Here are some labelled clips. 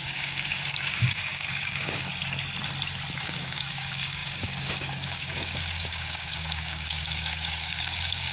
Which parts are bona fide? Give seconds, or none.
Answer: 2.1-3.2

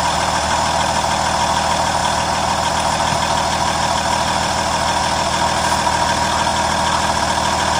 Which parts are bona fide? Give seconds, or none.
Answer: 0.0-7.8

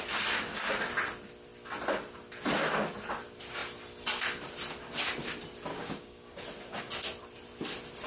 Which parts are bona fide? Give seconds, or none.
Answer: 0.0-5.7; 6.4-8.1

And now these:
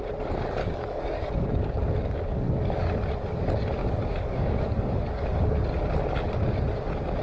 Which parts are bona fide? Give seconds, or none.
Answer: 0.0-0.6; 3.0-3.8; 5.3-7.2

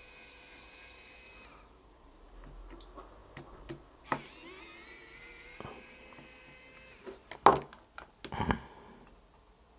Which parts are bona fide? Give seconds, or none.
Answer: 0.0-9.8